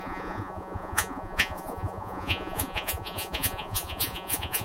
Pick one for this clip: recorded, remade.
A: remade